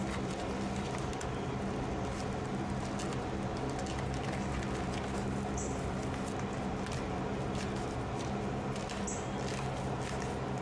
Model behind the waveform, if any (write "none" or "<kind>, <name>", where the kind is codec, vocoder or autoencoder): none